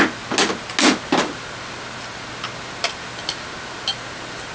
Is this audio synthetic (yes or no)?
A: no